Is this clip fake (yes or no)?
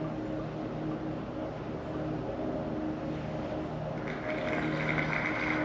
no